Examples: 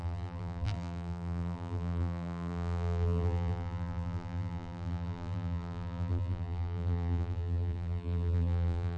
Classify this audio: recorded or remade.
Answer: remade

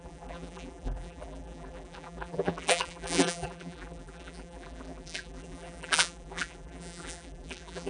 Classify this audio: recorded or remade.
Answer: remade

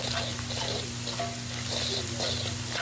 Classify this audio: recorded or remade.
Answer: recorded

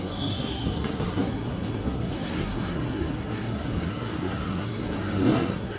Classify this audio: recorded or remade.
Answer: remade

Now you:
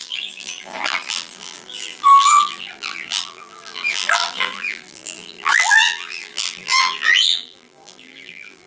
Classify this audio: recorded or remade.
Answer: remade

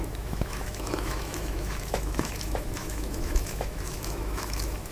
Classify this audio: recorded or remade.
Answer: remade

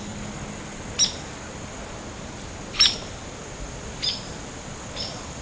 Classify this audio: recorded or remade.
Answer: recorded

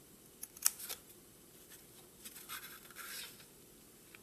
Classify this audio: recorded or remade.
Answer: remade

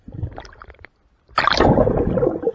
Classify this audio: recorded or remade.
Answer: recorded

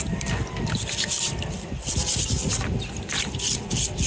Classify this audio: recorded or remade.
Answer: remade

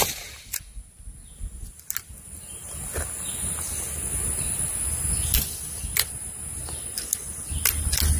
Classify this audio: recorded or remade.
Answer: recorded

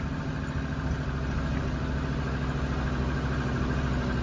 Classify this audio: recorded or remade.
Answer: recorded